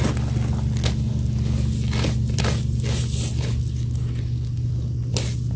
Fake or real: real